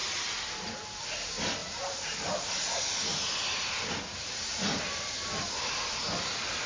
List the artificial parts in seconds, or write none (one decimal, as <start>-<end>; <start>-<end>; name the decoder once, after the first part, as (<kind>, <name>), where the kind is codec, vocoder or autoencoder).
none